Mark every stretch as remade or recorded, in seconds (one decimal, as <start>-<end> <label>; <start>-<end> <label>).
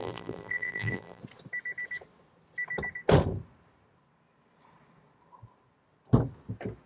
0.0-1.2 remade; 1.2-6.9 recorded